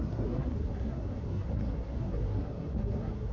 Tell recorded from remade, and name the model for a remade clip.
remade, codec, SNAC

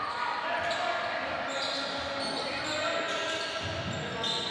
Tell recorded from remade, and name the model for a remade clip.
recorded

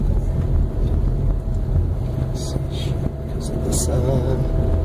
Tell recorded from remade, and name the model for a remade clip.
recorded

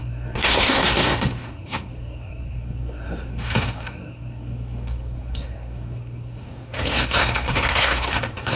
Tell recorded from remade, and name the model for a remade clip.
remade, codec, SNAC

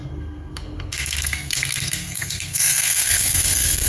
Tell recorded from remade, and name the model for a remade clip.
remade, codec, SNAC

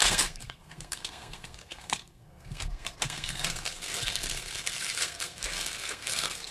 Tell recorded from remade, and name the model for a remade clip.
remade, codec, SNAC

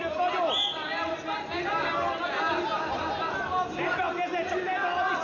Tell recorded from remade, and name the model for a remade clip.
recorded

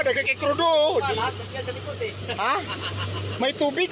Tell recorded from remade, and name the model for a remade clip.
recorded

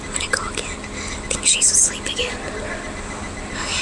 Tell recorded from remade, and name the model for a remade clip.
recorded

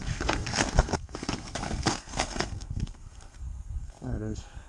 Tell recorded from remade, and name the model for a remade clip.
remade, codec, SNAC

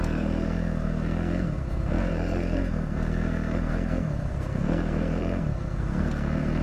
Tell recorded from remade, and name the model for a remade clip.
remade, codec, SNAC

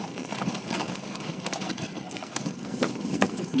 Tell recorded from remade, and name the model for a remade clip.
remade, codec, SNAC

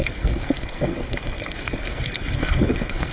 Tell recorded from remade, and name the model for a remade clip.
remade, codec, SNAC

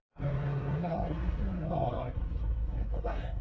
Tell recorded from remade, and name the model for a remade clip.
remade, codec, SNAC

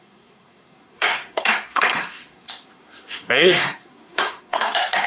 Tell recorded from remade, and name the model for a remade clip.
remade, codec, SNAC